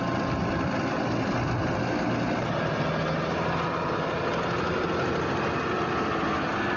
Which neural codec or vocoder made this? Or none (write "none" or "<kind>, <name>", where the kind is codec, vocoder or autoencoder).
none